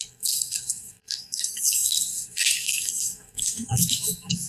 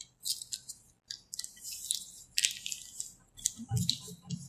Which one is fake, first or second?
first